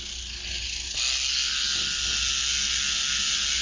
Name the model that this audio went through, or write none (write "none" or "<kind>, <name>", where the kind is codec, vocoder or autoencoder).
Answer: none